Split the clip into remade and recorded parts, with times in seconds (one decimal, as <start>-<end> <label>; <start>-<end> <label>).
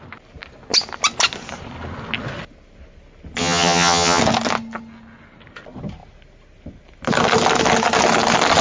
0.0-3.4 recorded; 3.4-4.2 remade; 4.2-8.6 recorded